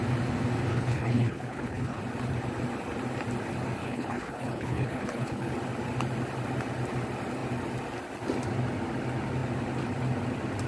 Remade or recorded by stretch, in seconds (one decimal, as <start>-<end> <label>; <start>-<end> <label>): 0.0-0.7 recorded; 0.7-2.0 remade; 2.0-3.8 recorded; 3.8-5.5 remade; 5.5-10.7 recorded